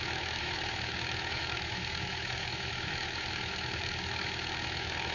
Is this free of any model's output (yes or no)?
no